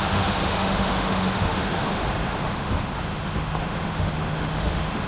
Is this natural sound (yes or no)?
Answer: no